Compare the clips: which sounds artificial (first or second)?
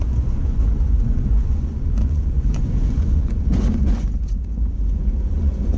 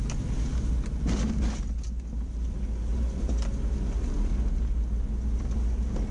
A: first